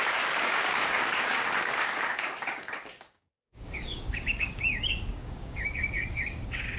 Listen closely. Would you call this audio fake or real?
fake